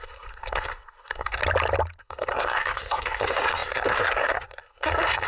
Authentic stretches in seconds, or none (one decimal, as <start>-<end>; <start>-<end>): 1.4-2.0